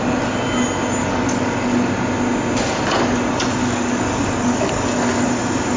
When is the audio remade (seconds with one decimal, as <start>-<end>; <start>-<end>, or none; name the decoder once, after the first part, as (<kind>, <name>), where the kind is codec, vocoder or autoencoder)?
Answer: 1.0-1.9 (codec, DAC); 3.6-5.1